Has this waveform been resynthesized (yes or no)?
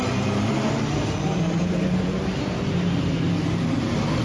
yes